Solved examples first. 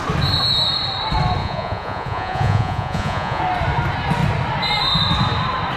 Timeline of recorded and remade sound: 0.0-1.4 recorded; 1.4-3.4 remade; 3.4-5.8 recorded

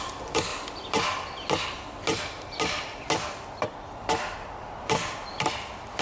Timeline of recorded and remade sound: 0.0-6.0 recorded

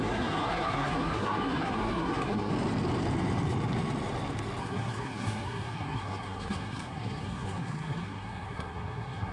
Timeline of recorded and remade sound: 0.0-2.5 remade; 2.5-4.6 recorded; 4.6-9.3 remade

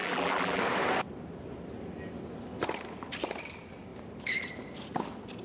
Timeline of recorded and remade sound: 0.0-0.6 remade; 0.6-5.4 recorded

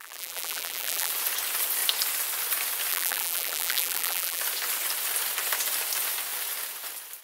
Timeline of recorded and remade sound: 0.0-1.1 remade; 1.1-2.9 recorded; 2.9-4.4 remade; 4.4-7.2 recorded

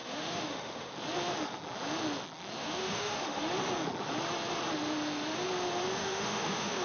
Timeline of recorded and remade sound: 0.0-0.9 remade; 0.9-2.6 recorded; 2.6-3.5 remade; 3.5-6.0 recorded; 6.0-6.8 remade

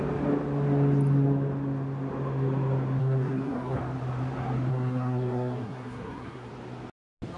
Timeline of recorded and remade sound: 0.0-3.0 recorded; 3.0-3.8 remade; 3.8-4.7 recorded; 4.7-6.5 remade; 6.5-7.4 recorded